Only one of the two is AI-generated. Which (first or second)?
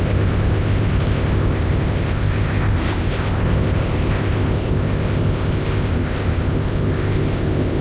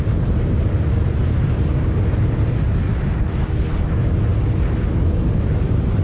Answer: first